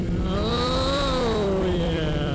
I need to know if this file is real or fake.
fake